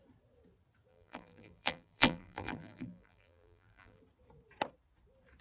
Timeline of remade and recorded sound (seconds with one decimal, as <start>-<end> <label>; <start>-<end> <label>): 0.0-0.9 recorded; 0.9-4.0 remade; 4.0-5.4 recorded